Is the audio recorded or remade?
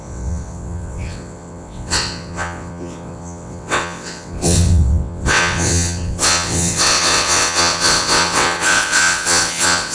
remade